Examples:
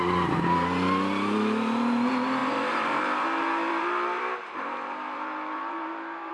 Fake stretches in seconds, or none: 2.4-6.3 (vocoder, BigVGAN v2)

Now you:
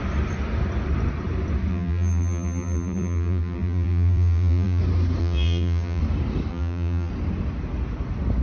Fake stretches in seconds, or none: 1.7-4.8 (vocoder, BigVGAN v2); 5.2-6.0; 6.5-7.1